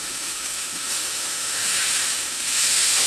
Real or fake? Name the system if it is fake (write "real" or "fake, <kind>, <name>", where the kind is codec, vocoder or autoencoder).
fake, autoencoder, DAC-VAE